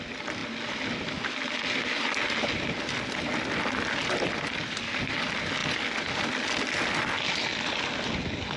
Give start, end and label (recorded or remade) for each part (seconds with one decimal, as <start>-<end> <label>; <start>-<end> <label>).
0.0-8.6 recorded